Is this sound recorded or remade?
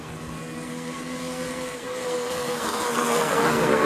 remade